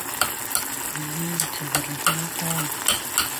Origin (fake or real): real